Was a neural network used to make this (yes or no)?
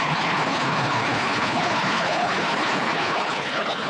yes